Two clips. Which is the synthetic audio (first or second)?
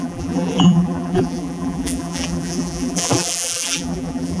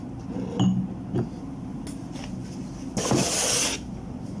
first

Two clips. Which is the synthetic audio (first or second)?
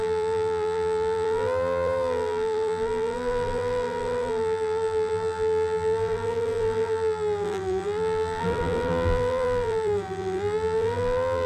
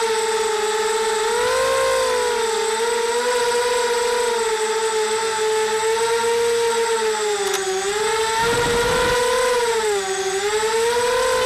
first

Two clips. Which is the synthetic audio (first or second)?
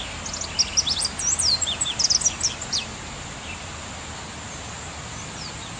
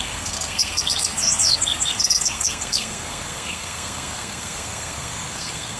second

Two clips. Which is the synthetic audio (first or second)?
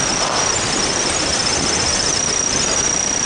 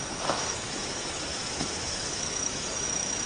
second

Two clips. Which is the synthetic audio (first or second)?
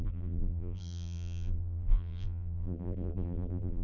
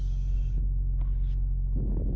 first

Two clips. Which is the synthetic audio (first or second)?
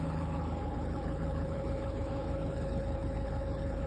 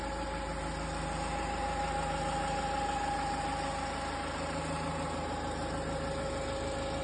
first